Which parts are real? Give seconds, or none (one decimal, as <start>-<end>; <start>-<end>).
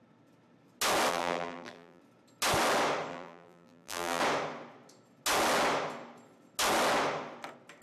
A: 0.0-1.1; 2.0-3.1; 4.2-7.8